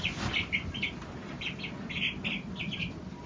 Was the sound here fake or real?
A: real